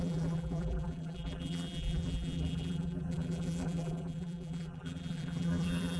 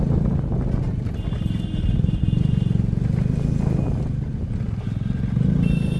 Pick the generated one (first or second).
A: first